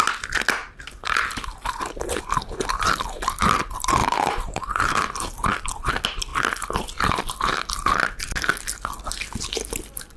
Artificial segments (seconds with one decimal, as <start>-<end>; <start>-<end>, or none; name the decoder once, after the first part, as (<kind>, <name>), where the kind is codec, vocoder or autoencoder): 0.6-2.2 (vocoder, BigVGAN v2); 4.0-5.5